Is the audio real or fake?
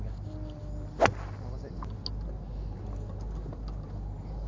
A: real